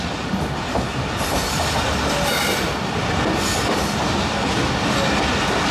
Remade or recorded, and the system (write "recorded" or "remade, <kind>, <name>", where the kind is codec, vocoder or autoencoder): recorded